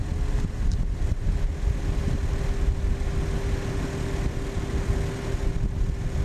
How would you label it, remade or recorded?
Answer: recorded